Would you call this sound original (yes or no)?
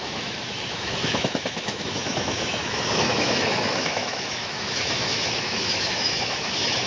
no